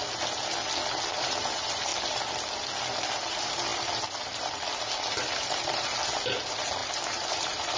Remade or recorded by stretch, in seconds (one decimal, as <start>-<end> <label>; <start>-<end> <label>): 0.0-1.1 recorded; 1.1-1.9 remade; 1.9-2.8 recorded; 2.8-7.8 remade